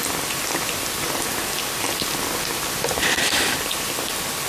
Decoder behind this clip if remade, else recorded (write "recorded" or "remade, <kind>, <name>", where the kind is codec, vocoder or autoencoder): recorded